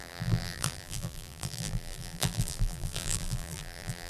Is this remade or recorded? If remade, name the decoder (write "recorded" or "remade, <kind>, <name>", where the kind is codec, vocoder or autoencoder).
remade, vocoder, BigVGAN v2